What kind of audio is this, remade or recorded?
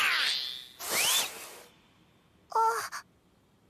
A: recorded